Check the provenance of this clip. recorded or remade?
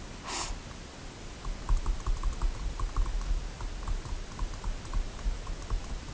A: recorded